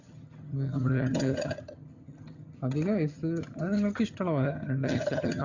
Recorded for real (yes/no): no